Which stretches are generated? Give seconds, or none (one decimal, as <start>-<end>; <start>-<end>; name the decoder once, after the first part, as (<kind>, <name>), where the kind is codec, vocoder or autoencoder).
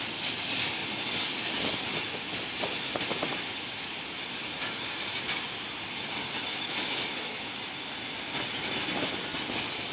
6.5-7.5 (autoencoder, DAC-VAE)